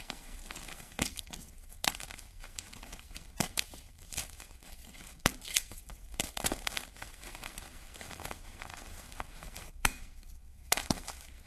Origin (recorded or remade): remade